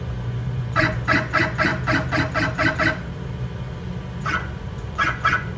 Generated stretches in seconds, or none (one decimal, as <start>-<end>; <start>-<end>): 0.0-1.7; 4.2-5.6